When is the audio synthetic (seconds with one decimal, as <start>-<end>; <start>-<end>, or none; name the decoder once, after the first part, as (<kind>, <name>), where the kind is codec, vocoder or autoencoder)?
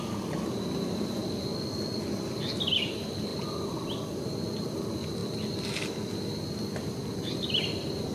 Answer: none